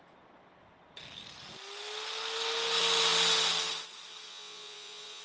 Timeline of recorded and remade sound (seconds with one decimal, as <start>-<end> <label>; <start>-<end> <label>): 0.0-4.3 recorded; 4.3-5.2 remade